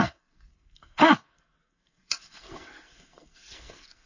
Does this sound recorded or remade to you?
remade